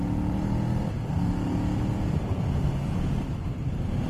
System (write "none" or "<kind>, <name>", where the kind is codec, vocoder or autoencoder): none